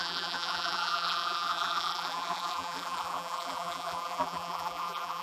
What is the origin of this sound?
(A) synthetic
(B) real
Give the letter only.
A